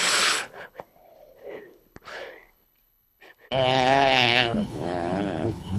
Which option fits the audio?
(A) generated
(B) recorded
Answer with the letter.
A